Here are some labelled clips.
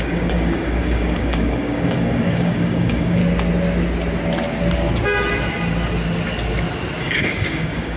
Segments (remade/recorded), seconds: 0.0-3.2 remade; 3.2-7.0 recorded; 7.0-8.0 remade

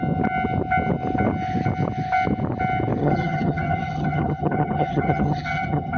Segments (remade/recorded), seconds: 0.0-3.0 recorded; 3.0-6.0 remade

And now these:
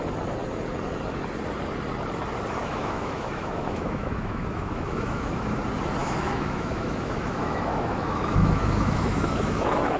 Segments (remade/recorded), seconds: 0.0-2.6 recorded; 2.6-5.6 remade; 5.6-6.0 recorded; 6.0-10.0 remade